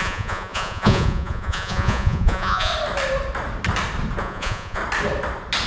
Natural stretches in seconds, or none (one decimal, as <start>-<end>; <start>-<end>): 2.7-4.2; 4.8-5.7